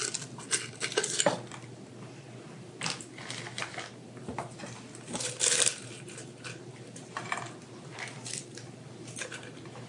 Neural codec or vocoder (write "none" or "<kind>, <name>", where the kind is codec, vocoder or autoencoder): none